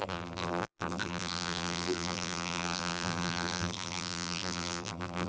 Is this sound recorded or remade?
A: remade